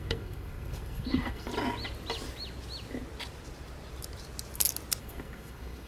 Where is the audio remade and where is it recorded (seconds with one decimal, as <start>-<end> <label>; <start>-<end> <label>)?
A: 0.0-1.5 remade; 1.5-5.0 recorded; 5.0-5.9 remade